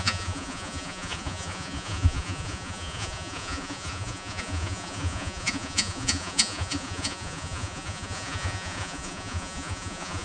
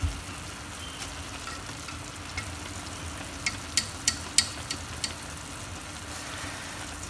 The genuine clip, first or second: second